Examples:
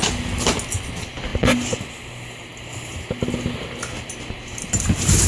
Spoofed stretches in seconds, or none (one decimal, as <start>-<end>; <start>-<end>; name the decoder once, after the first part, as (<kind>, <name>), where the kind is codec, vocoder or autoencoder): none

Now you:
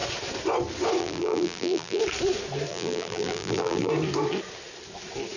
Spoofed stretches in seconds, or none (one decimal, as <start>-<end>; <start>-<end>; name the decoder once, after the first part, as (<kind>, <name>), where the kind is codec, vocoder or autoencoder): 1.0-2.0 (vocoder, BigVGAN v2); 2.7-3.9

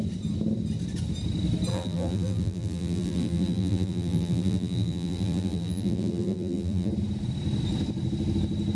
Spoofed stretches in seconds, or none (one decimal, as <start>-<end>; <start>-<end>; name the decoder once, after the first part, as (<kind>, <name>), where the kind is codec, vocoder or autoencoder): 1.7-6.9 (vocoder, BigVGAN v2)